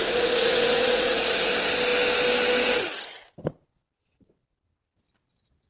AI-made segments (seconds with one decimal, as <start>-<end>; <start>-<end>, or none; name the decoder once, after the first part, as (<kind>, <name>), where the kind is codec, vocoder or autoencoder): 0.0-1.5 (vocoder, Vocos)